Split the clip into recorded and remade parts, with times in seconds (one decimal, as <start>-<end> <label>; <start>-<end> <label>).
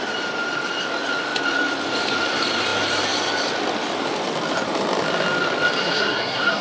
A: 0.0-5.8 recorded; 5.8-6.6 remade